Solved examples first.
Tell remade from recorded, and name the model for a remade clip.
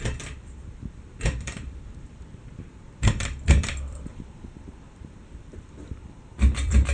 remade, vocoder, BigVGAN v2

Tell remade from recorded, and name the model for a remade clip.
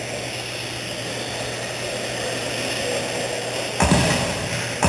recorded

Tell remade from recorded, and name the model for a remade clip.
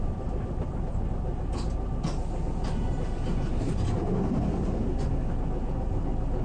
recorded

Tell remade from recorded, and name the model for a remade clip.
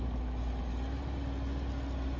recorded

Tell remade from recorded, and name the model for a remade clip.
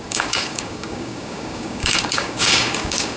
remade, codec, DAC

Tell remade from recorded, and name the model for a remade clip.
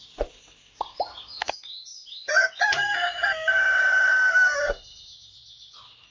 recorded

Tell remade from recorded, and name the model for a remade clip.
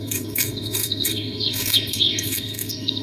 remade, codec, SNAC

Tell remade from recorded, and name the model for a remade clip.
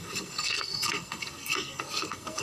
remade, codec, SNAC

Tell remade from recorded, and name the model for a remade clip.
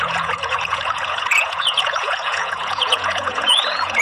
remade, vocoder, Vocos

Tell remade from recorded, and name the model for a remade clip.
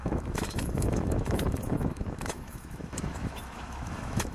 remade, autoencoder, DAC-VAE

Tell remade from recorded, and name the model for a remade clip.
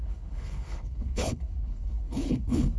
remade, codec, HILCodec